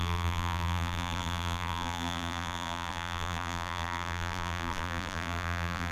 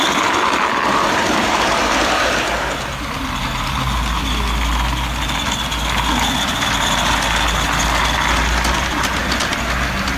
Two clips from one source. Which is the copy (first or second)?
first